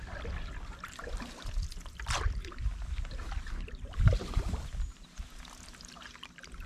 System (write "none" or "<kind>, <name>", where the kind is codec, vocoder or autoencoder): none